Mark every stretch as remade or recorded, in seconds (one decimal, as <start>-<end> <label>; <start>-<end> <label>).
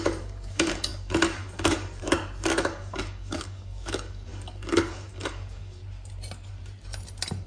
0.0-5.8 remade; 5.8-7.5 recorded